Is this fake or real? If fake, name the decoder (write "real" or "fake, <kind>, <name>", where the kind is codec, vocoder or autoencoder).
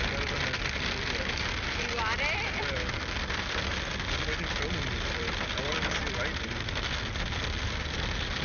real